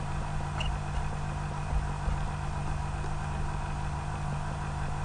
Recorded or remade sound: recorded